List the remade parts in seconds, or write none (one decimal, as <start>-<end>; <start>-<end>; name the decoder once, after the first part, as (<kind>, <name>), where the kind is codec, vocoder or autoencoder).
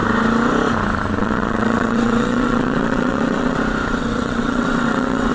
1.2-3.6 (vocoder, WaveNeXt); 4.0-5.3